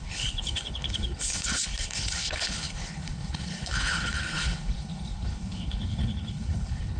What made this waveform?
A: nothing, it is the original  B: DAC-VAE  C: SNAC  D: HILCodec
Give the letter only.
D